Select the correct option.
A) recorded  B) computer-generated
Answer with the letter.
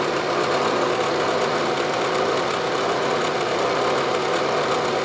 A